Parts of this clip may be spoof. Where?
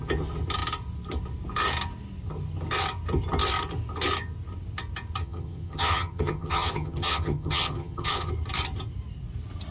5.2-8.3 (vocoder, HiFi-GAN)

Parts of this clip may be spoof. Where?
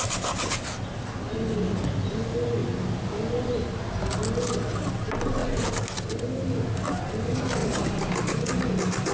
5.4-5.9 (vocoder, BigVGAN v2); 7.6-8.6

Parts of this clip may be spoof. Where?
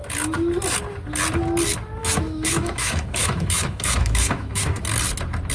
2.0-4.8 (autoencoder, DAC-VAE)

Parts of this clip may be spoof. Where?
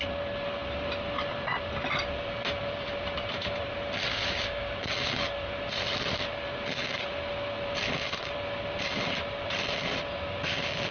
4.1-4.7 (codec, DAC)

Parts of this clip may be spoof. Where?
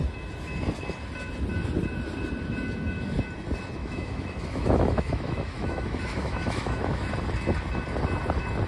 3.8-7.1 (autoencoder, DAC-VAE)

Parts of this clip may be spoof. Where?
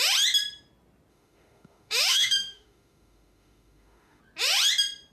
1.1-4.2 (autoencoder, DAC-VAE)